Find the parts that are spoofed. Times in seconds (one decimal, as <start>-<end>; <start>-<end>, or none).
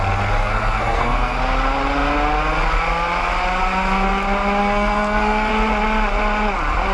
0.4-1.4; 4.6-5.5